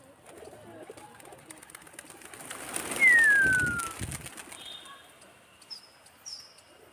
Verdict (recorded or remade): recorded